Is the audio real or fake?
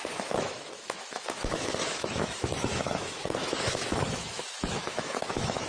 fake